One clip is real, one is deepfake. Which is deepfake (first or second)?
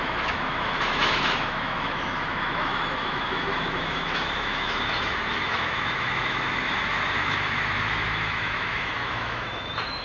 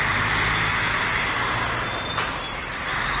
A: first